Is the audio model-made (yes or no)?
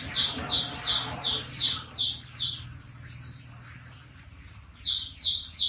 no